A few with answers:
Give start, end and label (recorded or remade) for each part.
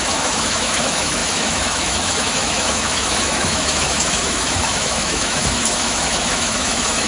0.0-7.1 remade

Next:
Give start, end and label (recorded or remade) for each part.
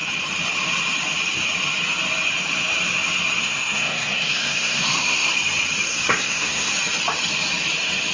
0.0-3.4 recorded; 3.4-5.3 remade; 5.3-5.9 recorded; 5.9-6.7 remade; 6.7-8.1 recorded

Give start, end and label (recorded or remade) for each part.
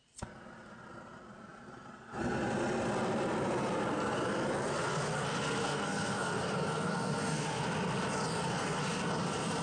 0.0-5.6 recorded; 5.6-7.6 remade; 7.6-8.3 recorded; 8.3-8.8 remade; 8.8-9.6 recorded